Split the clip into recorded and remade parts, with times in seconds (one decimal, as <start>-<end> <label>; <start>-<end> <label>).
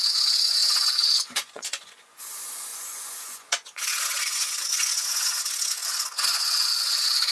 0.0-7.3 remade